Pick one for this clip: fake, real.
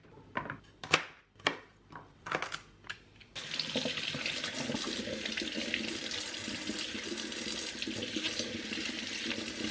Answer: real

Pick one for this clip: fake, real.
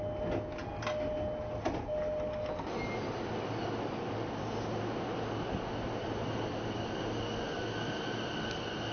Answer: real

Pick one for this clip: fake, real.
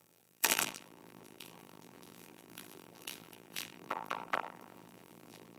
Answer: fake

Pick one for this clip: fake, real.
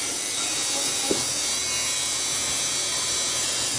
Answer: real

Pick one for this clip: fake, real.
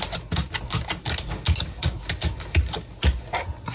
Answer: real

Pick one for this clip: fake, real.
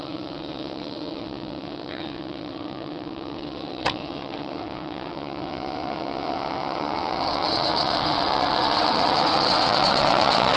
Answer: fake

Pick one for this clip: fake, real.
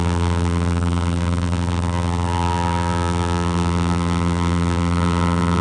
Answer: fake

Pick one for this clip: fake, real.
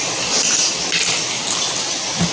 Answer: real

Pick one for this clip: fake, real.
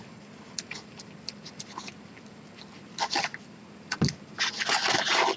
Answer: real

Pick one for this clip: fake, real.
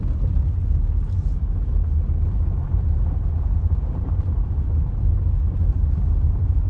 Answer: real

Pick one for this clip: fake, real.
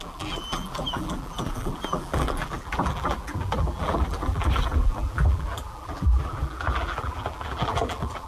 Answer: fake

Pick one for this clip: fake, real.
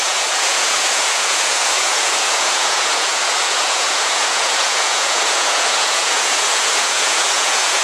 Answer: fake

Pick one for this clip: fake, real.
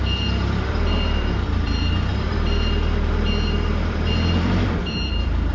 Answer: fake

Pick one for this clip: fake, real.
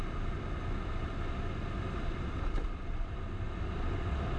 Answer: real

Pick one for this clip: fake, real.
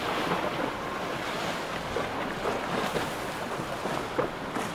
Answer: real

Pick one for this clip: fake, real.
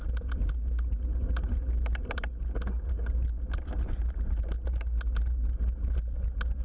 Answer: real